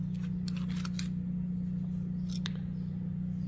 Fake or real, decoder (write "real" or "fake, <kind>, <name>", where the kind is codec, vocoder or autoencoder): real